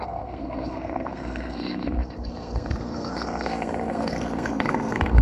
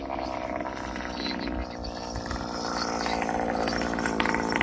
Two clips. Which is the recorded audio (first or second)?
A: second